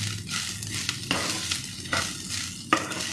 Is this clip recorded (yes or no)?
yes